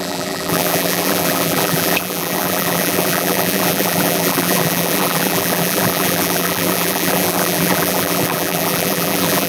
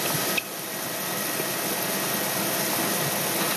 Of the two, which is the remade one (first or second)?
first